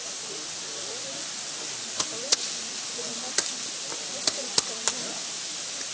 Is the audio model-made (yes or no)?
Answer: no